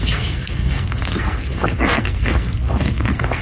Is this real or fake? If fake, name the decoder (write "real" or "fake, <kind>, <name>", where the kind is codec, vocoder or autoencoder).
fake, codec, SNAC